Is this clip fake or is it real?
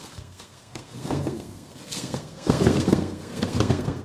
fake